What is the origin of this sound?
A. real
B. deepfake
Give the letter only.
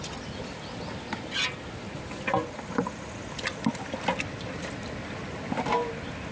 A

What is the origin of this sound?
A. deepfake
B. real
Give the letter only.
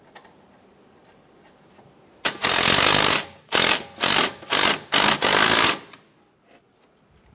B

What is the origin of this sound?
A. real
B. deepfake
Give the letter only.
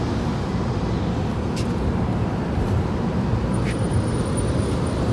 B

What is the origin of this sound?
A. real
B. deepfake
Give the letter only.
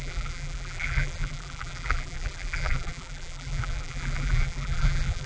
B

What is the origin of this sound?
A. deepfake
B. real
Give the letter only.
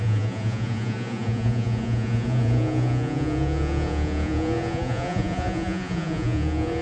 A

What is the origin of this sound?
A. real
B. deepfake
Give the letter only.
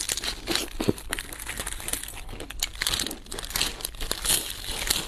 A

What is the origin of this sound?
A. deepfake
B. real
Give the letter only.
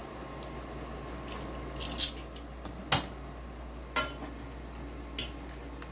B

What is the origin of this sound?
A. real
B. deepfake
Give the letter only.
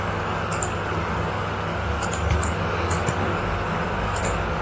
B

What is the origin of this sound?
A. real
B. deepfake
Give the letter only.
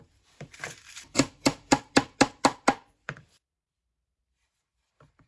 B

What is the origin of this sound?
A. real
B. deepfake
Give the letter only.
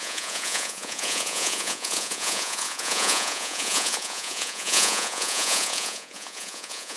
B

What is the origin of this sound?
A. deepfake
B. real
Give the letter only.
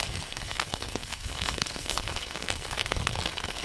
A